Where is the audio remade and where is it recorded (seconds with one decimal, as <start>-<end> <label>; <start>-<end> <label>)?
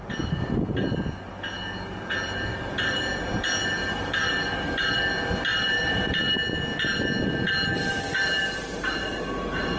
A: 0.0-2.5 recorded; 2.5-3.0 remade; 3.0-3.8 recorded; 3.8-4.3 remade; 4.3-5.5 recorded; 5.5-6.2 remade; 6.2-8.2 recorded; 8.2-8.9 remade; 8.9-9.8 recorded